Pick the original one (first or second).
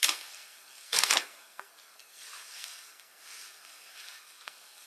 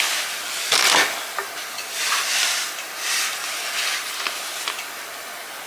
second